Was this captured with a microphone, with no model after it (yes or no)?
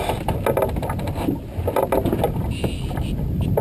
yes